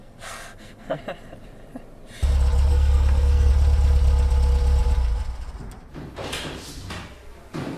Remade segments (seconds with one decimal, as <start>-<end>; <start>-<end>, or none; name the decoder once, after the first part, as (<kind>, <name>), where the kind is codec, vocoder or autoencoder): 0.0-1.0 (codec, SNAC); 2.7-3.5